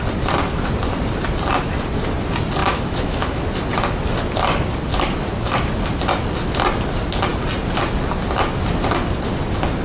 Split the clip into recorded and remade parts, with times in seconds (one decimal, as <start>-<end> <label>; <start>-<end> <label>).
0.0-2.6 recorded; 2.6-3.4 remade; 3.4-9.8 recorded